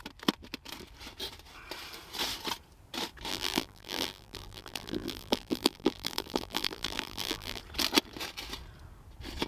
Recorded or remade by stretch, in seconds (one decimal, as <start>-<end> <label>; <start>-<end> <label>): 0.0-3.3 recorded; 3.3-7.6 remade; 7.6-9.5 recorded